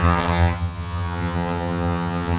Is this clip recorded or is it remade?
remade